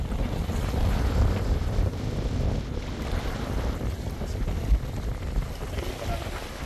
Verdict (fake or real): real